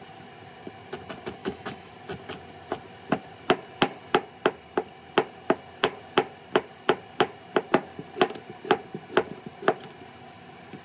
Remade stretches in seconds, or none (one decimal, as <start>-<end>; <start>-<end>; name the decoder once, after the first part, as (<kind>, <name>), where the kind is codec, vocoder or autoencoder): 1.4-1.9 (autoencoder, DAC-VAE)